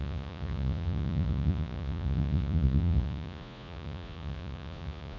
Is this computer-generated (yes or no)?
yes